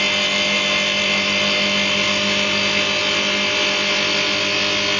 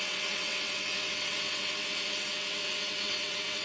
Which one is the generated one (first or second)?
second